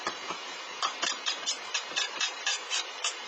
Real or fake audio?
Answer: fake